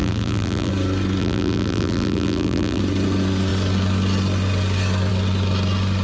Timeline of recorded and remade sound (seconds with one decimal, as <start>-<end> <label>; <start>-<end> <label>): 0.0-0.7 remade; 0.7-1.2 recorded; 1.2-2.8 remade; 2.8-6.0 recorded